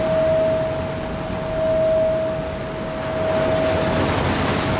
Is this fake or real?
real